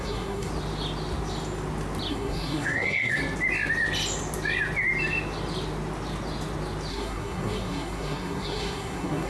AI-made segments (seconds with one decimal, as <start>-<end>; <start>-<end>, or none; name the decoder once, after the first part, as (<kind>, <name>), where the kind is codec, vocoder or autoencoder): 0.0-0.5 (codec, SNAC); 2.1-3.2; 6.9-9.3